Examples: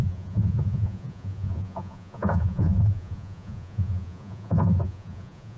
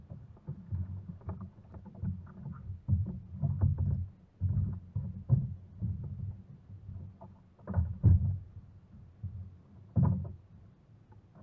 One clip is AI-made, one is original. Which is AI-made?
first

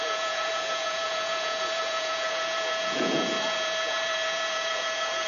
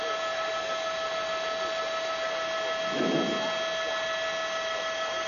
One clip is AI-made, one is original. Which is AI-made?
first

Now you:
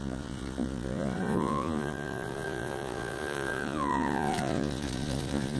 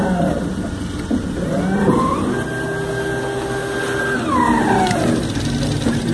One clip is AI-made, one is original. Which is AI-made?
first